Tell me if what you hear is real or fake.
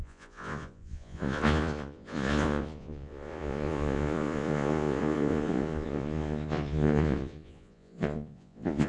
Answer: fake